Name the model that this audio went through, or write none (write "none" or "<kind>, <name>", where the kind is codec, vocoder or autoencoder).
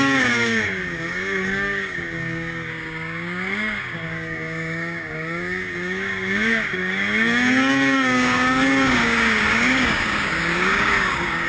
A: codec, DAC